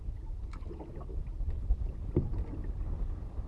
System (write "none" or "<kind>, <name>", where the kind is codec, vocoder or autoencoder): none